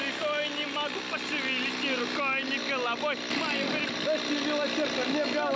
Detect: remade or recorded recorded